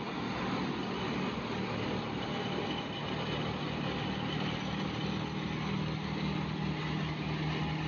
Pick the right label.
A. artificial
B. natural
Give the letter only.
B